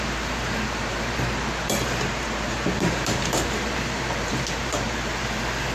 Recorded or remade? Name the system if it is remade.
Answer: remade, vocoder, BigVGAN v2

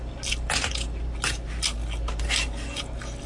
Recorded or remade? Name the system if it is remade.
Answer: recorded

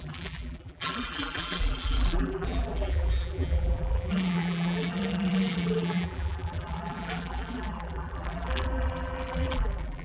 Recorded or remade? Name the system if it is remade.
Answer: remade, vocoder, BigVGAN v2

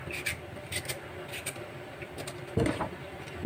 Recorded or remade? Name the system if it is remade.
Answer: recorded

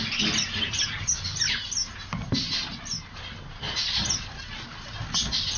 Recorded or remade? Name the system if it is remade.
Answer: recorded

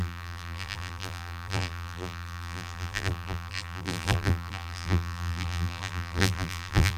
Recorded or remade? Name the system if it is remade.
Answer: remade, vocoder, BigVGAN v2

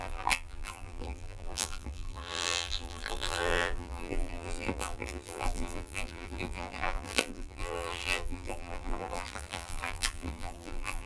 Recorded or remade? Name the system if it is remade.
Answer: remade, vocoder, BigVGAN v2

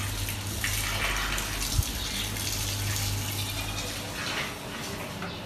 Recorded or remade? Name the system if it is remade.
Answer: recorded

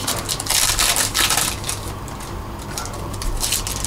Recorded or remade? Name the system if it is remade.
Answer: recorded